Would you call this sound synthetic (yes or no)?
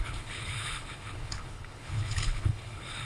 yes